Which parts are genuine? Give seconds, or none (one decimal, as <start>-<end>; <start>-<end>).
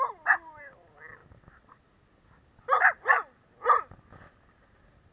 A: 0.0-5.1